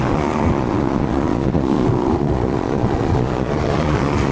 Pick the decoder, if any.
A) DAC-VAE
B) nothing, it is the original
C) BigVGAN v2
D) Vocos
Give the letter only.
D